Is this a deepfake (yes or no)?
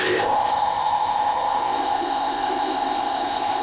yes